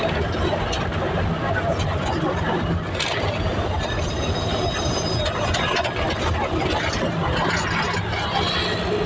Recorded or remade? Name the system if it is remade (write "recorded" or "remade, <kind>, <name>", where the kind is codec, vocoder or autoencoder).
recorded